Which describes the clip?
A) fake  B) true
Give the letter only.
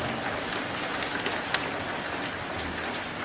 B